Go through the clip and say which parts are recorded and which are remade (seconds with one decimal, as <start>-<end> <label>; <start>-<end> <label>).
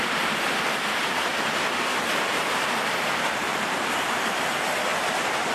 0.0-1.3 remade; 1.3-2.0 recorded; 2.0-4.9 remade; 4.9-5.5 recorded